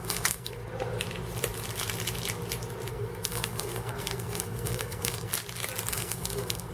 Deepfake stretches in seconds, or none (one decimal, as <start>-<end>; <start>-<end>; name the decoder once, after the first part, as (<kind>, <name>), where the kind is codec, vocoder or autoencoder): 0.0-0.6 (codec, SNAC); 2.9-5.3; 5.9-6.7